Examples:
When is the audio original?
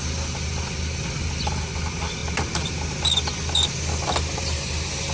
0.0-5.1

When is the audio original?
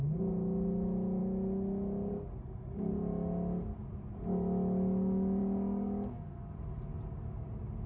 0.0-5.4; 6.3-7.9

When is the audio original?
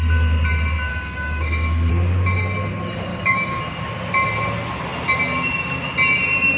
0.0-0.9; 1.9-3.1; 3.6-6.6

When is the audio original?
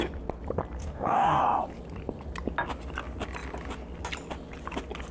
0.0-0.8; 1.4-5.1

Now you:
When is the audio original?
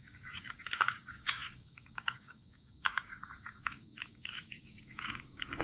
none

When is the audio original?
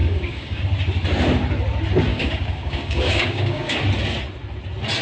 0.6-2.1; 3.8-5.0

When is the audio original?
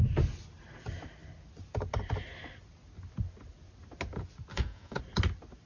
0.0-4.5; 5.0-5.7